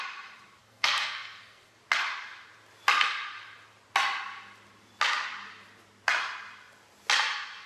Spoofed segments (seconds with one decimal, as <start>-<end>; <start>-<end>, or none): 0.6-1.8